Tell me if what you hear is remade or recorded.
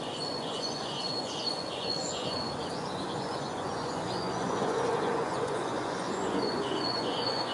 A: remade